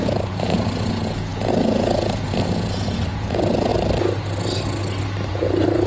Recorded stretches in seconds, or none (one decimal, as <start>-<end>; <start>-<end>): 3.7-5.3